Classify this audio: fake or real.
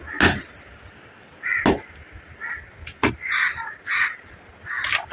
real